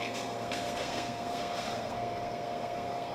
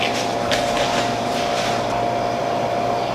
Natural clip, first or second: second